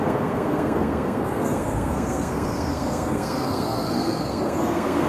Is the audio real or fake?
fake